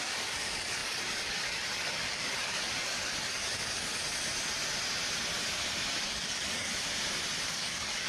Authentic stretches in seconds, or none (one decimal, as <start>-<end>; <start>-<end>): 4.0-6.0; 6.7-7.5